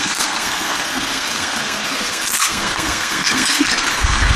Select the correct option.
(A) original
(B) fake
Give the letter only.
B